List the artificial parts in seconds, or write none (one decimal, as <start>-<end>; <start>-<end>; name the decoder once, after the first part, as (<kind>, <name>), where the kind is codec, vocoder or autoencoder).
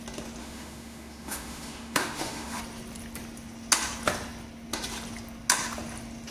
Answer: 0.4-2.6 (autoencoder, DAC-VAE)